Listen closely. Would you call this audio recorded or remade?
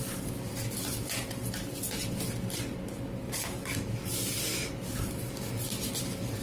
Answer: recorded